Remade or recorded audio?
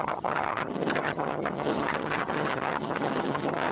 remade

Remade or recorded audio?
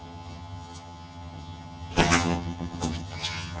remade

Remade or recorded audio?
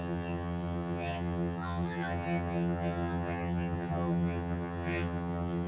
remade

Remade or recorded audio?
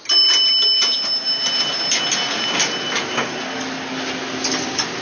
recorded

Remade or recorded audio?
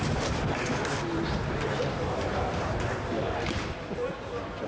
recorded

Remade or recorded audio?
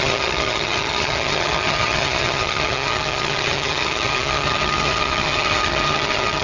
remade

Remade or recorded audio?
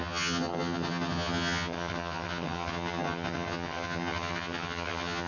remade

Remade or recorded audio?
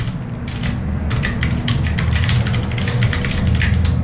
recorded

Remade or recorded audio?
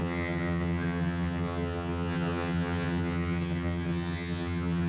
remade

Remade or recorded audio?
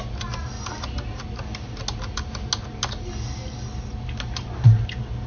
recorded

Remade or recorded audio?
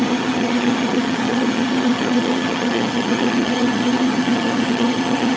remade